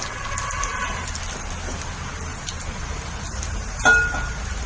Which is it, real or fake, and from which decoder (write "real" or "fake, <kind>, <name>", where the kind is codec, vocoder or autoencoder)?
real